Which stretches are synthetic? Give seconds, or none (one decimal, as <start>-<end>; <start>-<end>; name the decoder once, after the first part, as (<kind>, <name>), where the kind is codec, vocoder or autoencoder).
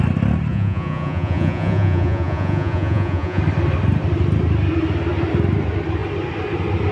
0.5-3.4 (vocoder, Vocos)